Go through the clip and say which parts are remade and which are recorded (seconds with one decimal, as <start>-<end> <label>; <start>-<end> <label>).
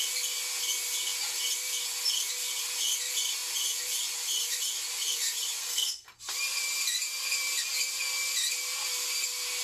0.0-5.6 recorded; 5.6-6.2 remade; 6.2-9.6 recorded